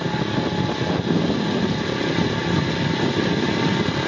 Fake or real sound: real